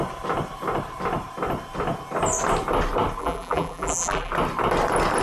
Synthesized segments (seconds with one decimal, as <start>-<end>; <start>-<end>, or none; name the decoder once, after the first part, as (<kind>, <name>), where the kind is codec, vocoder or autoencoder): 3.2-4.3 (vocoder, BigVGAN v2)